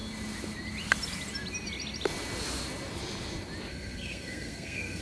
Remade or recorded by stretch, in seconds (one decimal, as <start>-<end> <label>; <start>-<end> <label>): 0.0-3.7 recorded; 3.7-5.0 remade